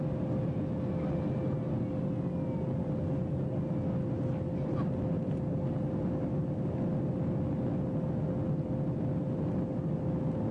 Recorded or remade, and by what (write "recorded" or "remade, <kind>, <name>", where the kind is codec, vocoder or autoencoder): recorded